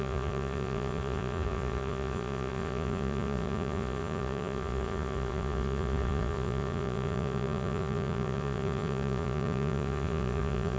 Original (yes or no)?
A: no